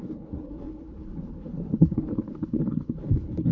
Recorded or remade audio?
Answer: remade